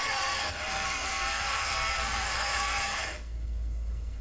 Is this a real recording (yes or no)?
no